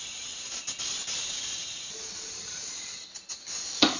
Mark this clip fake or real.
real